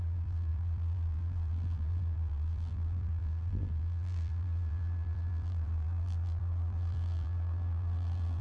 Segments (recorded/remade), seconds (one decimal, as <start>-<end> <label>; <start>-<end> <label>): 0.0-8.4 remade

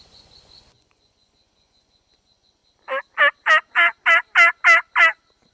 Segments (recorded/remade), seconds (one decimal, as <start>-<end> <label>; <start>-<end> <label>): 0.0-2.6 remade; 2.6-5.5 recorded

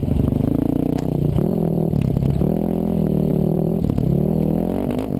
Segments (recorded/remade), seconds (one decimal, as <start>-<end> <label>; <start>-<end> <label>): 0.0-2.3 remade; 2.3-3.3 recorded; 3.3-4.0 remade; 4.0-5.2 recorded

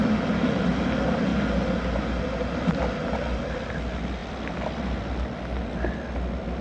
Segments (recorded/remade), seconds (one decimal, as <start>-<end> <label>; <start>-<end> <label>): 0.0-6.6 recorded

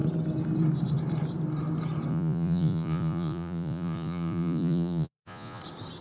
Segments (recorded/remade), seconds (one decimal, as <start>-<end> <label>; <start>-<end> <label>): 0.0-2.1 recorded; 2.1-5.6 remade; 5.6-6.0 recorded